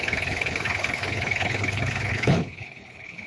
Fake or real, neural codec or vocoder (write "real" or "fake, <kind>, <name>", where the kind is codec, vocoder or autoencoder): fake, codec, HILCodec